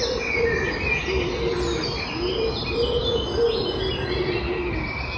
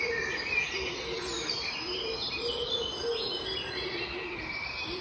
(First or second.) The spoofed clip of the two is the second